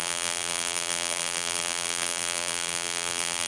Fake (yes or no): yes